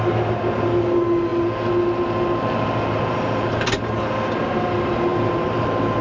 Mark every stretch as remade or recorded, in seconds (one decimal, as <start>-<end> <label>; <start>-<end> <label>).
0.0-6.0 recorded